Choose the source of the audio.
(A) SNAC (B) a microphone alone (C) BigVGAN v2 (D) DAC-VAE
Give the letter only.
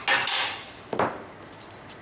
B